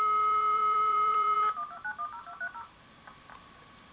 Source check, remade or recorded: remade